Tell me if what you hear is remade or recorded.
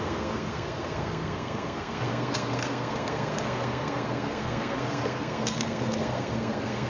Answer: remade